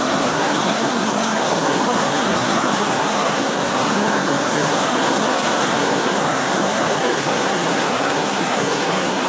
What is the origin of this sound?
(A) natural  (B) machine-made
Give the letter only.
B